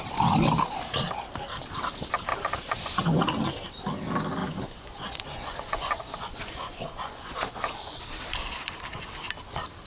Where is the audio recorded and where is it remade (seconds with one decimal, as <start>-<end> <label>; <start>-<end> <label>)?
0.0-2.3 recorded; 2.3-3.2 remade; 3.2-4.4 recorded; 4.4-8.0 remade; 8.0-9.9 recorded